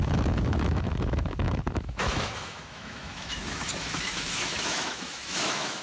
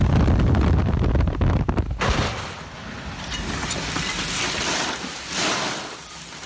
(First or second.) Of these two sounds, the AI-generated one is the first